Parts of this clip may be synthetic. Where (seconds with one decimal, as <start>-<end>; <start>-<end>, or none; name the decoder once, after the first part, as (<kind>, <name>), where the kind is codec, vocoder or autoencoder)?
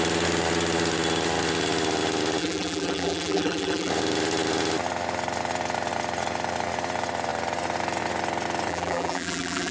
2.4-3.9 (vocoder, BigVGAN v2); 8.7-9.7